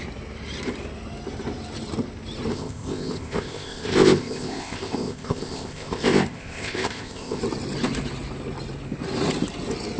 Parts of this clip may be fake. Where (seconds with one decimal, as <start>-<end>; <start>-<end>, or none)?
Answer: 2.5-7.4